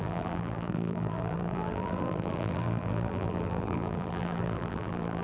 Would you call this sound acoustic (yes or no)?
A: no